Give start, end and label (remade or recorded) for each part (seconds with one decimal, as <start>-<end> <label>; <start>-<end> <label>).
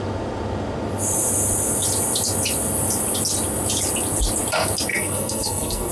0.0-4.9 recorded; 4.9-5.9 remade